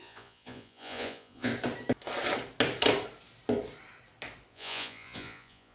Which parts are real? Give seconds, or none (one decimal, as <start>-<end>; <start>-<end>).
1.5-4.5